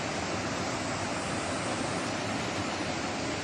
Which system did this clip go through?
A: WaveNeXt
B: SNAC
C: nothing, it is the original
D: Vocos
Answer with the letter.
C